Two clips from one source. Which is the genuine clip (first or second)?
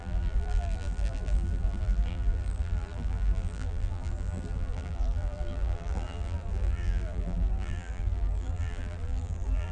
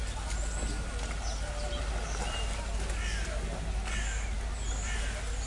second